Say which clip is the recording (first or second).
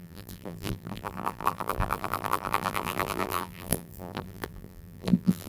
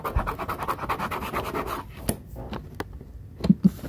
second